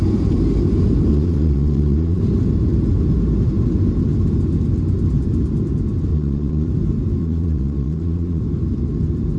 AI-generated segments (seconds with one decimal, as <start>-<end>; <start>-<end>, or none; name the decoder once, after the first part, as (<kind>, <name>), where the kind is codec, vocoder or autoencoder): 1.1-2.2 (vocoder, Vocos); 6.1-6.7; 7.2-8.4